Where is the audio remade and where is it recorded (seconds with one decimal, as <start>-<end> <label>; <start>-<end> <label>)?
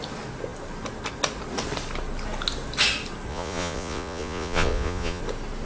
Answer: 0.0-3.3 recorded; 3.3-5.2 remade; 5.2-5.7 recorded